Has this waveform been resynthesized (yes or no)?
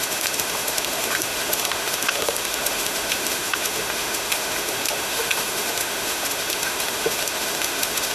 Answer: yes